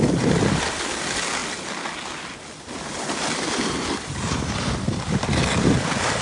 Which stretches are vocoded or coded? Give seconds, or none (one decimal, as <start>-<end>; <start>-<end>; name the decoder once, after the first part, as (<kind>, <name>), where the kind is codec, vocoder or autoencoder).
none